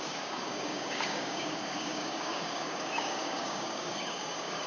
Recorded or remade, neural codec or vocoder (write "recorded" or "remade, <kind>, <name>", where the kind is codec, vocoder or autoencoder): remade, codec, DAC